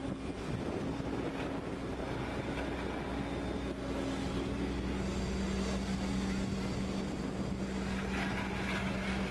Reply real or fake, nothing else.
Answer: real